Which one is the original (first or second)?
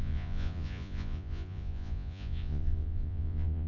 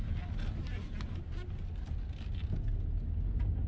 second